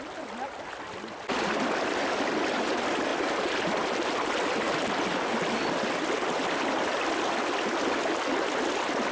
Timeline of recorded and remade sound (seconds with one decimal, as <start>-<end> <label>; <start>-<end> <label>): 0.0-9.1 recorded